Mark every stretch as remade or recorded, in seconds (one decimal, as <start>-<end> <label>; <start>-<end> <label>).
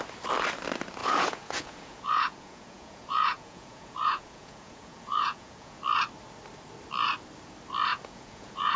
0.0-1.0 recorded; 1.0-5.8 remade; 5.8-7.9 recorded; 7.9-8.8 remade